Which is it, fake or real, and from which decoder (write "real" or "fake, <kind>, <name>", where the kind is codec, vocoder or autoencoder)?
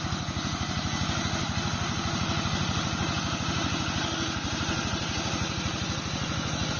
real